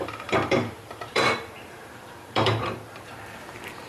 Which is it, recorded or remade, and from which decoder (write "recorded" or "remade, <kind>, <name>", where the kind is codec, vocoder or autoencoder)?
remade, vocoder, BigVGAN v2